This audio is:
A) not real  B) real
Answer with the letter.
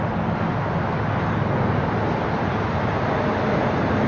B